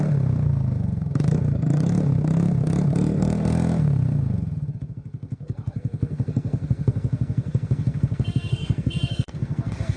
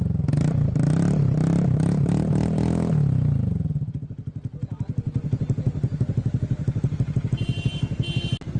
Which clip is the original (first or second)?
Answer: second